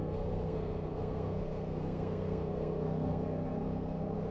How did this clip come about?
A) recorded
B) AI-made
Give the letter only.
B